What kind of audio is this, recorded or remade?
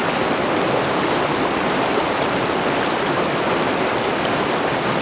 recorded